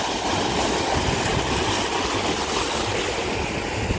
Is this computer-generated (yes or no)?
no